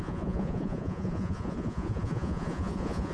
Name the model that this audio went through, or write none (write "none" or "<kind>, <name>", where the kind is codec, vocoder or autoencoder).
vocoder, Vocos